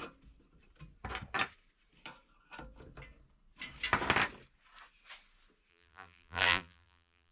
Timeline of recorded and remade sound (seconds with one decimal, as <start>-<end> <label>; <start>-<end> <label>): 0.0-5.7 recorded; 5.7-7.3 remade